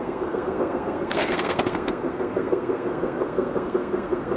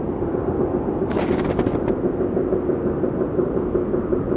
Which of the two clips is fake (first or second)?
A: first